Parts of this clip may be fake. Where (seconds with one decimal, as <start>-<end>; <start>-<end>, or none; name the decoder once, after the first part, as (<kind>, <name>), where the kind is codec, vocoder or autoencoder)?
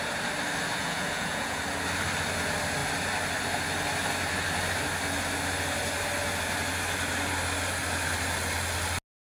0.8-1.6 (vocoder, Vocos)